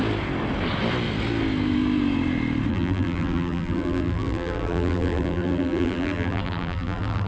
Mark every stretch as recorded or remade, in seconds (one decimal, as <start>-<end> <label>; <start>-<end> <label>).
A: 0.0-2.7 recorded; 2.7-7.3 remade